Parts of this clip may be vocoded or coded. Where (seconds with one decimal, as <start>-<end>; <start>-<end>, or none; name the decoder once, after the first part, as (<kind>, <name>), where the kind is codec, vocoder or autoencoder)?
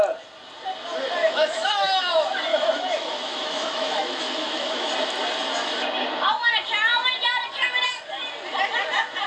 1.2-2.1 (autoencoder, DAC-VAE); 2.5-4.9